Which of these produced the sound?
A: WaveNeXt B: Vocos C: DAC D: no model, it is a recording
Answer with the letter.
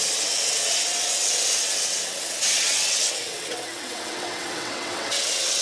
A